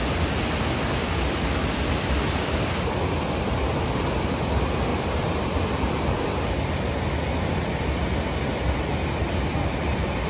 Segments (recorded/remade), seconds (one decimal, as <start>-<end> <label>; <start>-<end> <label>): 0.0-4.9 recorded; 4.9-6.3 remade; 6.3-10.3 recorded